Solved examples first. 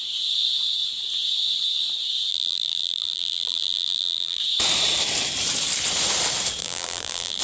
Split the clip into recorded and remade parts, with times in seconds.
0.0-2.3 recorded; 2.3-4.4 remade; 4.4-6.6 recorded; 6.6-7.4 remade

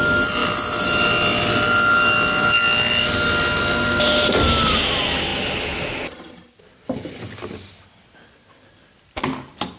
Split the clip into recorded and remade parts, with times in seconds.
0.0-9.8 recorded